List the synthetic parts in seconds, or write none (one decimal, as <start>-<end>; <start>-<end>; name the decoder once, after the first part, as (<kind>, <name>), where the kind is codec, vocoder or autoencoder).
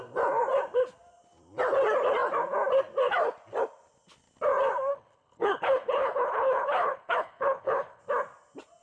4.9-8.0 (codec, HILCodec)